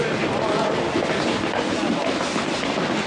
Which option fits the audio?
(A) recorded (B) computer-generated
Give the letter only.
A